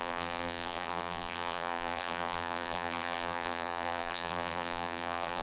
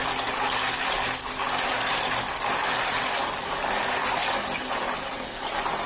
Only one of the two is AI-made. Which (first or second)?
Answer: first